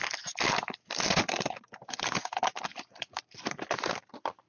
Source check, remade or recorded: recorded